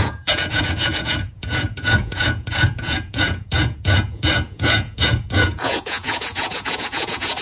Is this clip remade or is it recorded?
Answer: remade